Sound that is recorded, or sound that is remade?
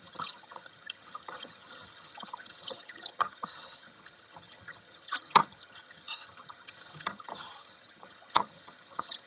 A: remade